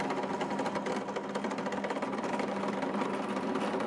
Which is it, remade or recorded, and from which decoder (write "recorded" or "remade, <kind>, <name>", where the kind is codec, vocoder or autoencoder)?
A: recorded